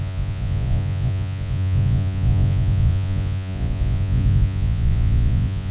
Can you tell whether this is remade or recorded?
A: remade